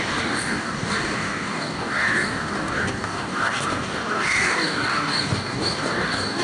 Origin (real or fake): fake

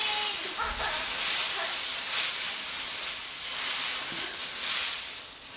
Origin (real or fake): real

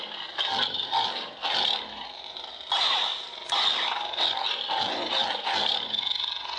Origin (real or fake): real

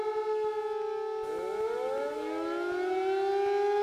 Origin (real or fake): real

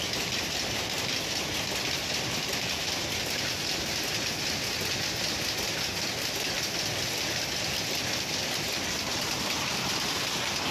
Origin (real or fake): real